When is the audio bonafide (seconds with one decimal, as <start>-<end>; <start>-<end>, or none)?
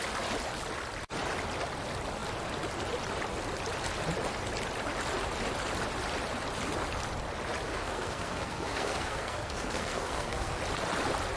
0.0-7.7; 10.6-11.4